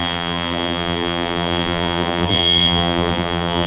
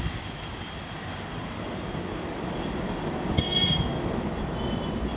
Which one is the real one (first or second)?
second